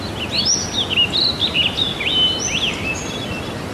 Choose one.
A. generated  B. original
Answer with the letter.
B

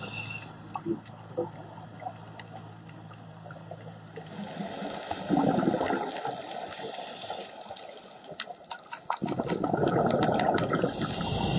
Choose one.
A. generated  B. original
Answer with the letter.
B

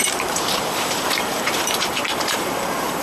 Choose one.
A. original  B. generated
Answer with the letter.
B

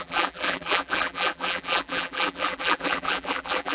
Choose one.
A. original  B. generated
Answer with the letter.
B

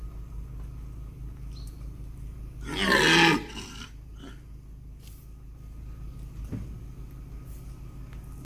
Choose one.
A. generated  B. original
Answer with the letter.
B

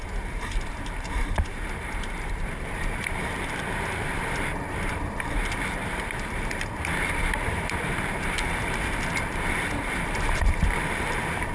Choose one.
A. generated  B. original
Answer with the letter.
A